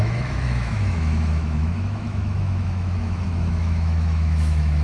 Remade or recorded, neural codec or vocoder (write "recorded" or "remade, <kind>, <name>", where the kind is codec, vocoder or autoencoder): remade, autoencoder, DAC-VAE